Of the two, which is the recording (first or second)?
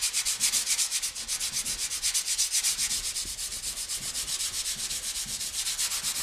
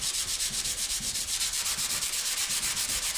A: first